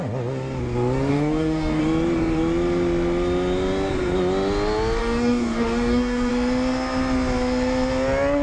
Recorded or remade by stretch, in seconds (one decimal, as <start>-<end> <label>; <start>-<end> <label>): 0.0-1.1 recorded; 1.1-1.8 remade; 1.8-5.0 recorded; 5.0-6.3 remade; 6.3-8.4 recorded